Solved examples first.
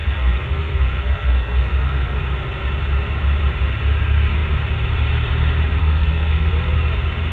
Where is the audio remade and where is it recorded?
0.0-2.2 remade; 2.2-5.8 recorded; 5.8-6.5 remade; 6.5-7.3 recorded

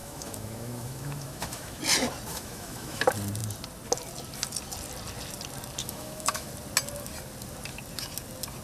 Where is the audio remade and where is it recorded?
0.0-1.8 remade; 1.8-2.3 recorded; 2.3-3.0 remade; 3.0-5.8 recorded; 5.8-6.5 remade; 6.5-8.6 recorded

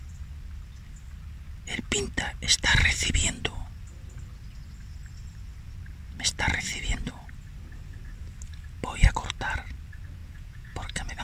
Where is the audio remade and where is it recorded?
0.0-10.2 recorded; 10.2-11.2 remade

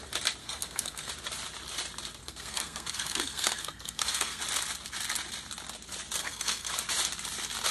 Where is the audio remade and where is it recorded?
0.0-0.4 recorded; 0.4-1.1 remade; 1.1-2.2 recorded; 2.2-4.4 remade; 4.4-6.2 recorded; 6.2-6.7 remade; 6.7-7.7 recorded

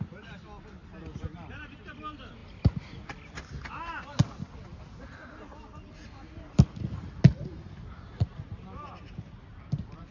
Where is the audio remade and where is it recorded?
0.0-10.1 recorded

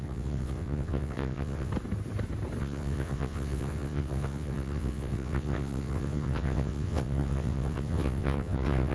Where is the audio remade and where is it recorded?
0.0-1.7 remade; 1.7-2.6 recorded; 2.6-8.9 remade